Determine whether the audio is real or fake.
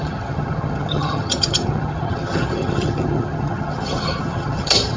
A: fake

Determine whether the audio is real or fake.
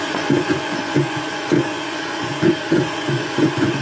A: fake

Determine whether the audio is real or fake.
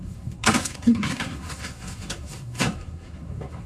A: fake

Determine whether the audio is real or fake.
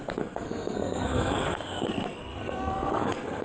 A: fake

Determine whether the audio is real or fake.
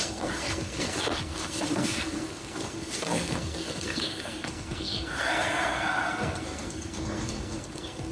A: fake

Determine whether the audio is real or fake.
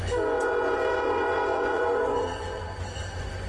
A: fake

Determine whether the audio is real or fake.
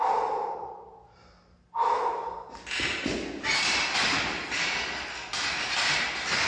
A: real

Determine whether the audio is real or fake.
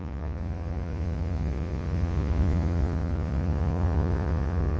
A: fake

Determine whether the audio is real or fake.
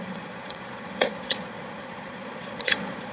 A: fake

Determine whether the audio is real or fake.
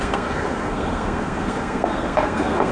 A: fake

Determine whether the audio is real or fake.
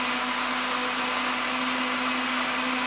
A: real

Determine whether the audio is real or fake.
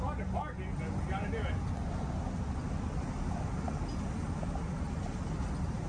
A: real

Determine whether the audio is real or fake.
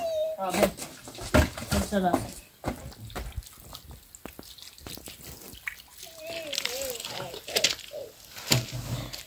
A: real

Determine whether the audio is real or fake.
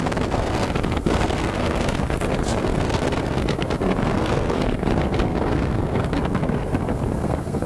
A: fake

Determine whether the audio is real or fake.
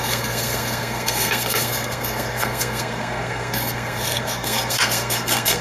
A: fake